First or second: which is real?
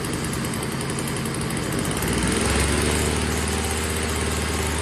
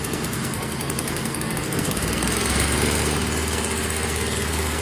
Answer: first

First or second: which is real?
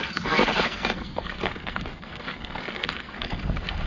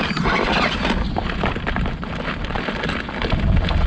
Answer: second